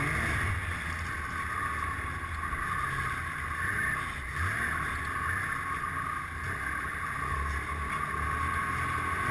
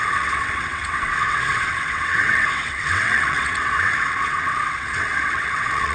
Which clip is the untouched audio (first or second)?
first